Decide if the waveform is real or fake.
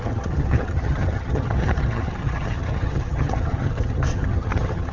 fake